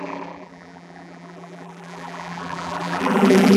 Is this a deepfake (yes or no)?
yes